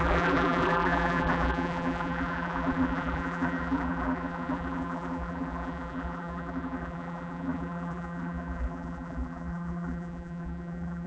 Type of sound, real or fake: fake